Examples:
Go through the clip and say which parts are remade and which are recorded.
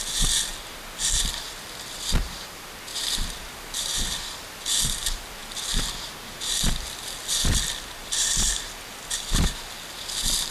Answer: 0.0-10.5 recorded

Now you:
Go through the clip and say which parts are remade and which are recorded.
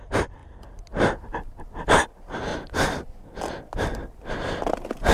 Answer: 0.0-2.5 recorded; 2.5-3.5 remade; 3.5-4.0 recorded; 4.0-5.1 remade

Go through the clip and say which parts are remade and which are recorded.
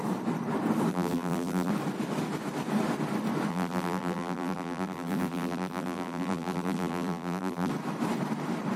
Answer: 0.0-0.9 recorded; 0.9-1.7 remade; 1.7-3.5 recorded; 3.5-7.7 remade; 7.7-8.8 recorded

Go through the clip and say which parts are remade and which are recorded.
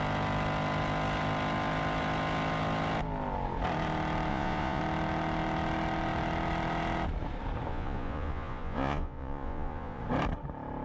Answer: 0.0-4.3 recorded; 4.3-4.8 remade; 4.8-7.7 recorded; 7.7-10.0 remade; 10.0-10.8 recorded